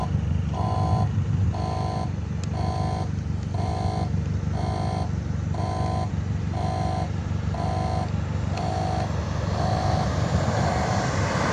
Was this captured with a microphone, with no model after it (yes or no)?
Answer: yes